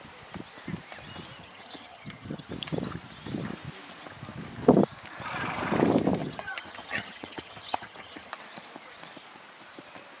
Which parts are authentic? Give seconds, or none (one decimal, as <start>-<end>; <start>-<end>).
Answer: 0.0-1.4; 2.5-6.2; 8.3-10.2